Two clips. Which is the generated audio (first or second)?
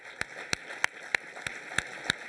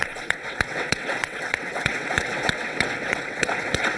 second